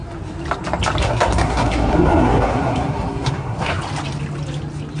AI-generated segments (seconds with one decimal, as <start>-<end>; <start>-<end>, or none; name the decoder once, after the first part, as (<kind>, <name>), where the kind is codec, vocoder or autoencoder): 1.0-3.8 (codec, SNAC)